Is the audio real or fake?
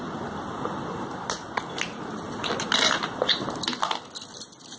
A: real